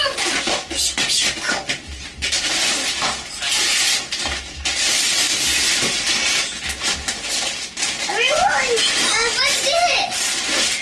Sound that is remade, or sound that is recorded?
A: recorded